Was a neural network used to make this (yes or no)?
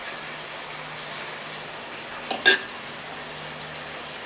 no